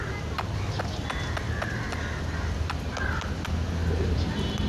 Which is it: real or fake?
real